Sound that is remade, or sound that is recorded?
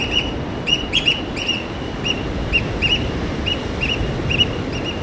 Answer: recorded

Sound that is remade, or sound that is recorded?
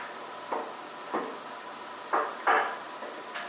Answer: recorded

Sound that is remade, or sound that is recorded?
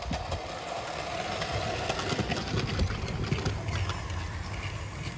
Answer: recorded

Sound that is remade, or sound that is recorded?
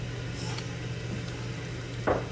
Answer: recorded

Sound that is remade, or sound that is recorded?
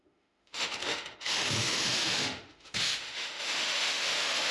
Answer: remade